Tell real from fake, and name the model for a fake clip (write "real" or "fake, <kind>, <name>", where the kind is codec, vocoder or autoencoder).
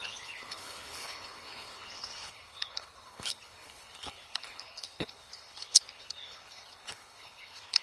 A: fake, codec, HILCodec